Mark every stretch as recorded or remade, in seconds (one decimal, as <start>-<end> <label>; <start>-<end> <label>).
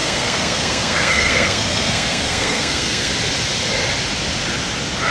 0.0-3.1 remade; 3.1-5.1 recorded